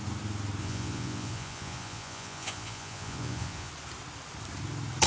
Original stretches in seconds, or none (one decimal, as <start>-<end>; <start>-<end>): 0.0-0.6; 3.7-5.1